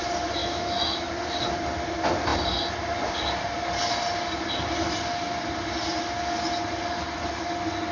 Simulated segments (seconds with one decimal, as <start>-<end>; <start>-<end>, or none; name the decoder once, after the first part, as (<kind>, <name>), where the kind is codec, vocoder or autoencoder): 0.4-1.1 (autoencoder, DAC-VAE)